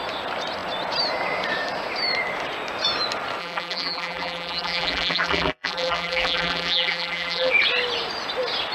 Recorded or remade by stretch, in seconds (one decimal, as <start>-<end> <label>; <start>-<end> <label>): 0.0-3.4 recorded; 3.4-7.5 remade; 7.5-8.7 recorded